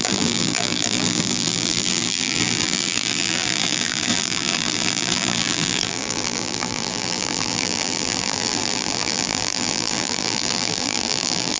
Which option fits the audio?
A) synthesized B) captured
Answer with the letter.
A